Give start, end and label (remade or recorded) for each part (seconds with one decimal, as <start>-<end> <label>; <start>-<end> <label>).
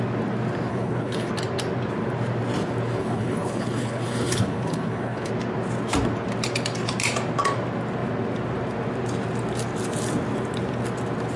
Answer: 0.0-0.7 recorded; 0.7-1.3 remade; 1.3-3.0 recorded; 3.0-5.3 remade; 5.3-11.4 recorded